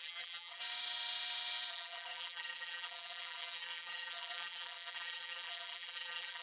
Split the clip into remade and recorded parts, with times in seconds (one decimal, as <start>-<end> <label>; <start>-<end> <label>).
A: 0.0-0.6 remade; 0.6-1.7 recorded; 1.7-6.4 remade